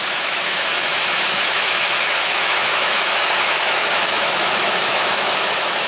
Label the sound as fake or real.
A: fake